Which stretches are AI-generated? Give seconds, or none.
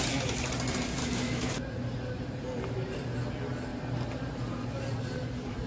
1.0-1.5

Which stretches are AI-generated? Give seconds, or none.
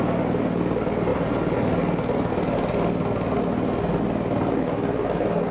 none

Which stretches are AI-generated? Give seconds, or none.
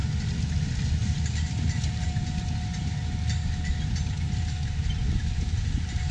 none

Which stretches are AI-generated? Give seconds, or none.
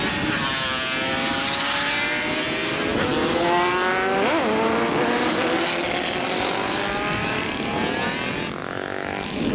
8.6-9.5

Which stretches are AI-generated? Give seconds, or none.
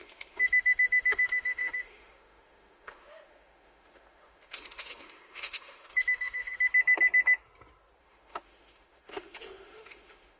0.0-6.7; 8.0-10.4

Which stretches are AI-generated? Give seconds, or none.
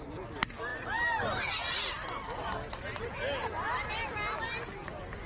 none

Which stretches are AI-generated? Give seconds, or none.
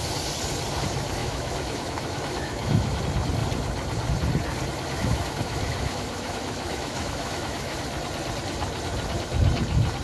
1.2-3.0; 5.0-7.8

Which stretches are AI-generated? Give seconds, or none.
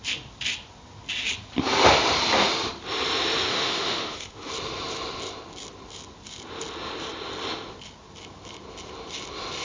3.5-4.5